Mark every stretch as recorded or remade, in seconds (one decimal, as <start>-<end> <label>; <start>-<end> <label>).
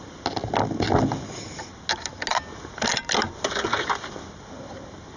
0.0-5.2 recorded